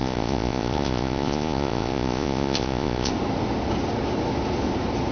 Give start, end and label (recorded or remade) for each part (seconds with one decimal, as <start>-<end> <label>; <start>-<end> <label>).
0.0-3.1 remade; 3.1-5.1 recorded